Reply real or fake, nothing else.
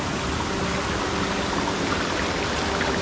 real